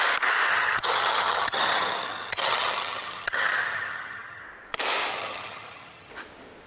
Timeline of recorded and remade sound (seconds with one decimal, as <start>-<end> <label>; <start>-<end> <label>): 0.0-0.5 recorded; 0.5-4.4 remade; 4.4-5.1 recorded; 5.1-6.1 remade; 6.1-6.7 recorded